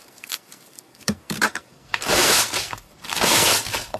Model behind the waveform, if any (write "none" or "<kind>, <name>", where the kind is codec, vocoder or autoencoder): codec, SNAC